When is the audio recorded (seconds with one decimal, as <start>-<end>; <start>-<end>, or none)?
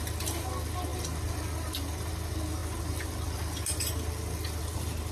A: 0.0-5.1